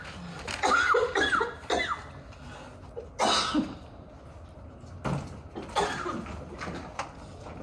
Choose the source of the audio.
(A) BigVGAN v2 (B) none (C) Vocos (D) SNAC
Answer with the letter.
B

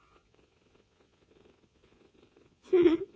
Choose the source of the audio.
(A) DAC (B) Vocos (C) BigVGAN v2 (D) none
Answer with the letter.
B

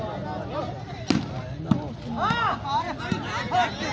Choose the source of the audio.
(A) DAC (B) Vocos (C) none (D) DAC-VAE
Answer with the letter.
C